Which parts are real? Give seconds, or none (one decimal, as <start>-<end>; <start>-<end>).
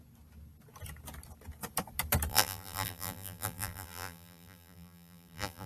0.0-2.3